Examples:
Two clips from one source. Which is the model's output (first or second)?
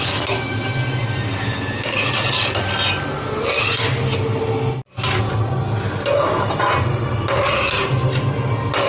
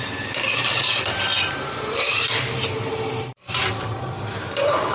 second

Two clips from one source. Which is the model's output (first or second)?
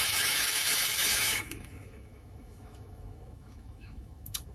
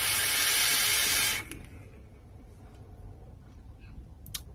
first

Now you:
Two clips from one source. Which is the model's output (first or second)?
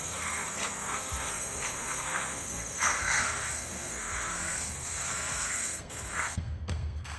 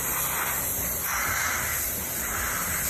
first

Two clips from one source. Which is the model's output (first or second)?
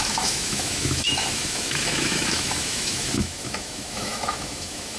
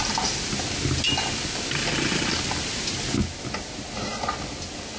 first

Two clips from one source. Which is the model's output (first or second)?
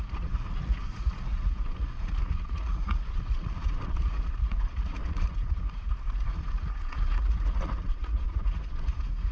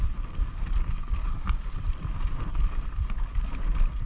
first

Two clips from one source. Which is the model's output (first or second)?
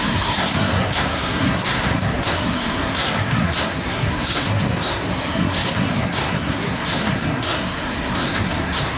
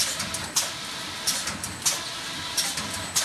first